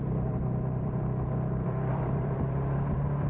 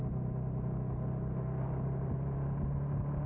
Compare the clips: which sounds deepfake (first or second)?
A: first